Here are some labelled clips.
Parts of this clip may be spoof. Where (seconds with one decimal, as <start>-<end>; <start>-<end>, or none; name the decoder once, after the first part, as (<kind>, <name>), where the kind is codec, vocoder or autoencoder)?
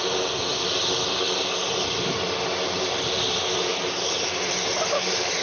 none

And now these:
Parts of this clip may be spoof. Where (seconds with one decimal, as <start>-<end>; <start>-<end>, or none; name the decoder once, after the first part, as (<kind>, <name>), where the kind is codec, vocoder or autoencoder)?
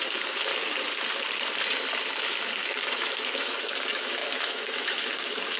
0.0-0.5 (autoencoder, DAC-VAE); 2.0-5.6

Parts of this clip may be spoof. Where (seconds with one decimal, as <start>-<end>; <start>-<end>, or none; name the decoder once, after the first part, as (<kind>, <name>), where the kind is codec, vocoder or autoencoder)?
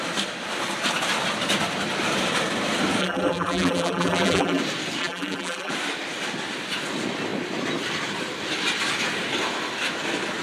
3.0-4.6 (vocoder, BigVGAN v2); 5.0-5.7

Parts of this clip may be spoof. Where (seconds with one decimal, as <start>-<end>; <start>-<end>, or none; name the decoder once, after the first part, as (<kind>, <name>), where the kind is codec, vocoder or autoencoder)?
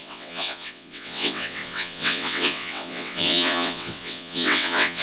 0.0-5.0 (vocoder, WaveNeXt)